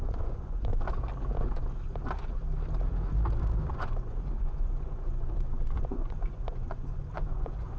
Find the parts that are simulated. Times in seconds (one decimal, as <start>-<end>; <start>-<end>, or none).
0.0-0.7; 3.7-7.8